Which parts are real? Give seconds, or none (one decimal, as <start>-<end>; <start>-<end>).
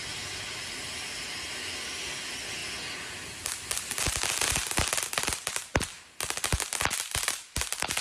0.0-8.0